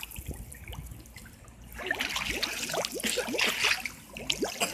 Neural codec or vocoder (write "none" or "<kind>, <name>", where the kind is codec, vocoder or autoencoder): none